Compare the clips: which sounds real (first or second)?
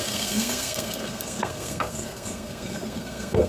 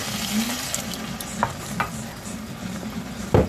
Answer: second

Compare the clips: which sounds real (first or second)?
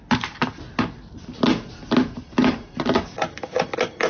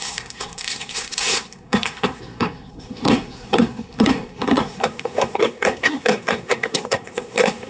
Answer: first